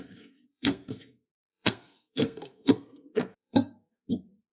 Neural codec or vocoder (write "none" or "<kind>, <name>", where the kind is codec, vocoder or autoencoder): codec, SNAC